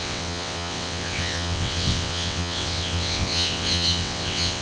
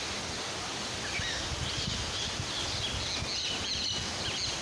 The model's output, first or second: first